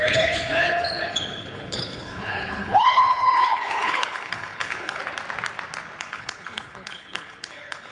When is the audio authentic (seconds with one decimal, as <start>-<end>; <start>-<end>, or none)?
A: 5.0-6.0